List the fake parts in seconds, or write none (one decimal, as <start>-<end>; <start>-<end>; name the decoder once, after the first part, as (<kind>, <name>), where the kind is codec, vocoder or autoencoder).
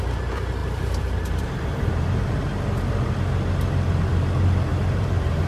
0.6-2.3 (vocoder, BigVGAN v2); 4.7-5.5